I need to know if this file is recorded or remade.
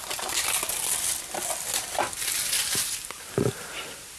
recorded